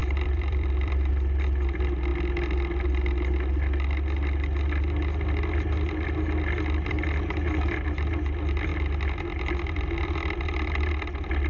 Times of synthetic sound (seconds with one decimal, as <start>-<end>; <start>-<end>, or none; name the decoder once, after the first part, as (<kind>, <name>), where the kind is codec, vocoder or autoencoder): 0.0-1.1 (vocoder, BigVGAN v2)